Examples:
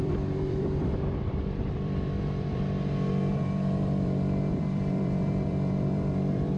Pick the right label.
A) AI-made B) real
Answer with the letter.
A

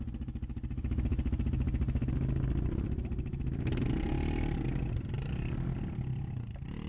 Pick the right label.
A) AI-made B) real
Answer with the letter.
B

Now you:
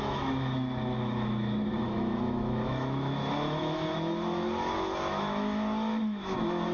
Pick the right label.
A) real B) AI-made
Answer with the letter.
B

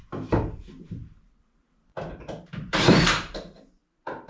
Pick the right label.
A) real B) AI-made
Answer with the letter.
B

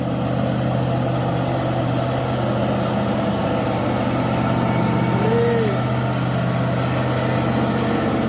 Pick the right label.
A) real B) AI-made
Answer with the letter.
A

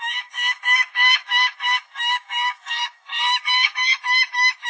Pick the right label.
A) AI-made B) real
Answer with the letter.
A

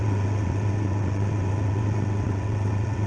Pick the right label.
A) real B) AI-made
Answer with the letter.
B